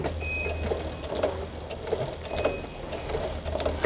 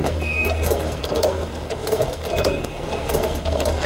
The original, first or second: first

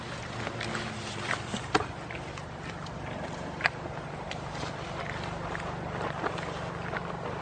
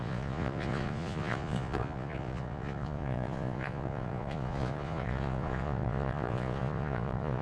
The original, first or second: first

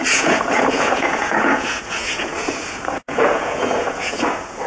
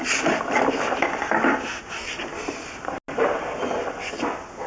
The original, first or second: second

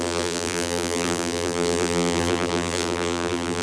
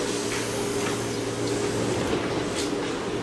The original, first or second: second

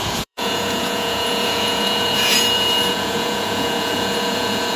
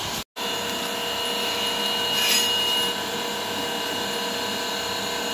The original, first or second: second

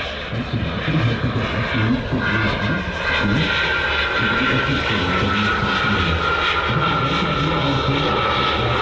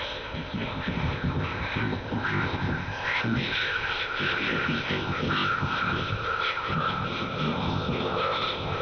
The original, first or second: first